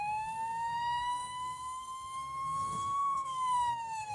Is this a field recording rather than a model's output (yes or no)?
no